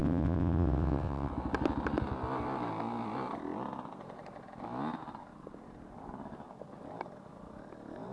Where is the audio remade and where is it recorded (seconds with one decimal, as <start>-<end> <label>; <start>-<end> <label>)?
0.0-1.3 remade; 1.3-8.1 recorded